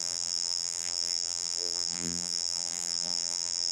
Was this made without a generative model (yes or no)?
no